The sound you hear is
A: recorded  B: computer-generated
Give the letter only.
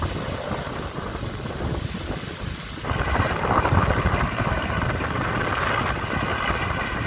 A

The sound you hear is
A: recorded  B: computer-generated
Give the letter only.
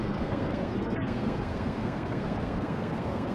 B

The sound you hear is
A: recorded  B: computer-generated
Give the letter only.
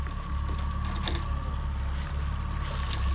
A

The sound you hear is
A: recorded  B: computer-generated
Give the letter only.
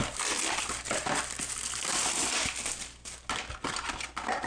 A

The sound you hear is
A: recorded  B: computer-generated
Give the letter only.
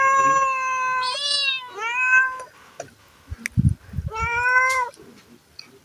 A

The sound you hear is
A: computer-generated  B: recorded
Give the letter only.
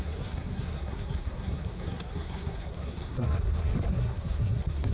A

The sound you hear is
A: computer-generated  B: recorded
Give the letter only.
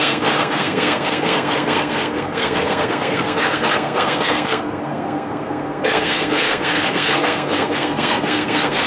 A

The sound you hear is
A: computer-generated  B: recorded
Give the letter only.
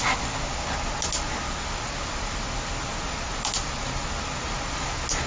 B